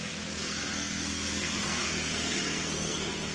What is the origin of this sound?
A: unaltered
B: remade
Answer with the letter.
B